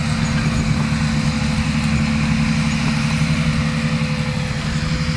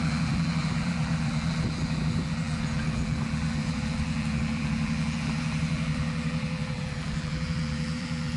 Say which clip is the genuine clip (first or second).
first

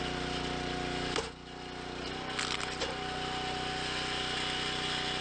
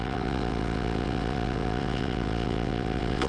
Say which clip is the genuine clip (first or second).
first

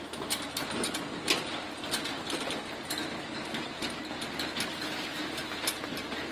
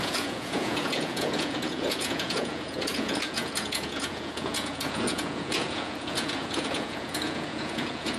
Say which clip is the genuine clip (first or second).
first